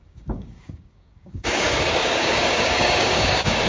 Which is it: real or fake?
fake